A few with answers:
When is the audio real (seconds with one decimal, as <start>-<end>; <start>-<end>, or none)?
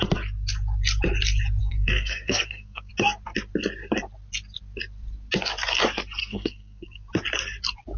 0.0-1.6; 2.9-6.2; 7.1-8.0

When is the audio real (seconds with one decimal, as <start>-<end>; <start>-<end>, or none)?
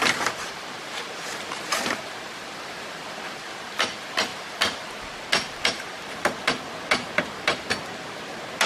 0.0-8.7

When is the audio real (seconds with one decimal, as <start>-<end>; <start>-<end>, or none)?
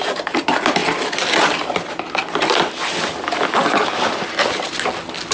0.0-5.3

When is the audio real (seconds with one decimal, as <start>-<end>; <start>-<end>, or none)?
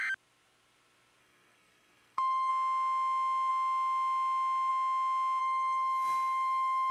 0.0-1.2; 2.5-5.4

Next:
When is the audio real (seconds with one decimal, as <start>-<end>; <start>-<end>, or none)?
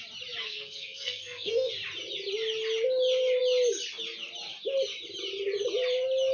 0.0-0.4; 1.7-6.3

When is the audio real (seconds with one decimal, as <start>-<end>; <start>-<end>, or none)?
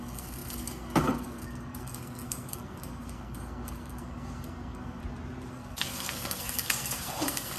5.0-5.5